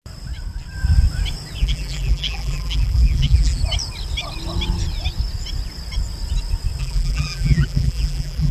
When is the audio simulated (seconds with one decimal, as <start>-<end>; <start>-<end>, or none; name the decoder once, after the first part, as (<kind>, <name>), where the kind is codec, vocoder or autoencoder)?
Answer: 1.6-3.6 (vocoder, BigVGAN v2); 6.8-8.5